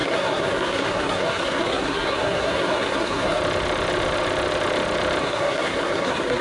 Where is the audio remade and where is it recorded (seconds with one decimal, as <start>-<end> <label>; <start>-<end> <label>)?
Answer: 0.0-3.4 remade; 3.4-5.2 recorded; 5.2-6.4 remade